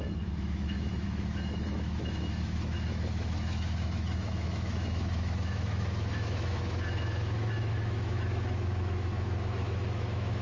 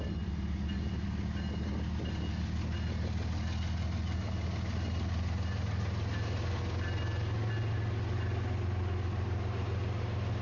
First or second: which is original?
second